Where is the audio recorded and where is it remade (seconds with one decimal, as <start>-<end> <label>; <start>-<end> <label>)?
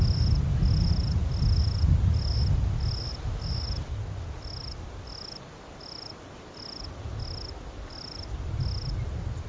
0.0-9.5 recorded